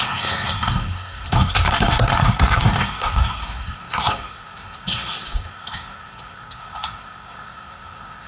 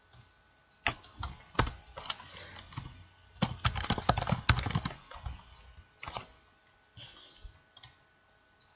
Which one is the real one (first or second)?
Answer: second